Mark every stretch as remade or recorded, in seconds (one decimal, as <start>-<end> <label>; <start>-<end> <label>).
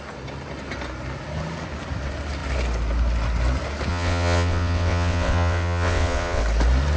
0.0-3.9 recorded; 3.9-6.4 remade; 6.4-7.0 recorded